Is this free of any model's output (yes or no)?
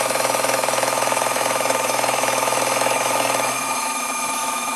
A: no